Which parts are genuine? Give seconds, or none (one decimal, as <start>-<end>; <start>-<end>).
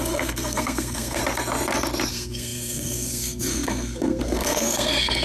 1.2-2.1